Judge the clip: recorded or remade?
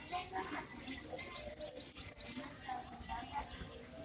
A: recorded